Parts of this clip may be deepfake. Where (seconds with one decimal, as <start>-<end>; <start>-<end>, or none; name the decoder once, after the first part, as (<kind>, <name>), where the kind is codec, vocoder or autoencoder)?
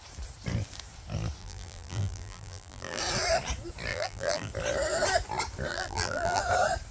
1.4-3.0 (vocoder, BigVGAN v2); 3.9-4.5; 5.7-6.4